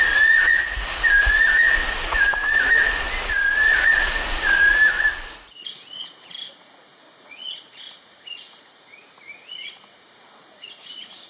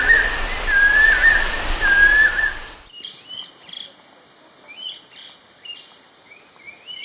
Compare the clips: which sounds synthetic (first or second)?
first